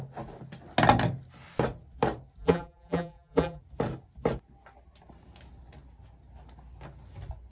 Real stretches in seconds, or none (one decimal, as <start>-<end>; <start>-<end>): 0.0-2.4; 3.6-7.5